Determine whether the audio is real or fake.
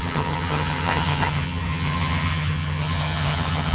fake